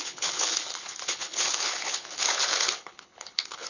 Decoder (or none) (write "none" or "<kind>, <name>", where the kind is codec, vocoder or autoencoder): codec, HILCodec